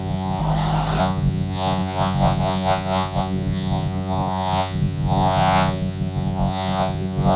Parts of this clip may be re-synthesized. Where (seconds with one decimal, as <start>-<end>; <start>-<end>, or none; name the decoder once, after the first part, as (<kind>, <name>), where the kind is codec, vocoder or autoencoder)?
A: 0.0-0.4 (vocoder, Vocos); 1.0-7.4